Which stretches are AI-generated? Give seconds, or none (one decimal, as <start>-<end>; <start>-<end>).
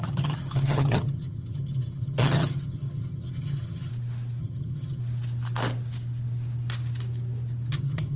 0.0-3.9; 4.4-5.0; 7.7-8.2